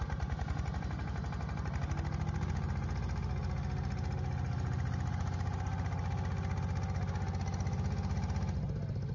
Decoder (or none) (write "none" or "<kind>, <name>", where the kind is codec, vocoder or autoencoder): none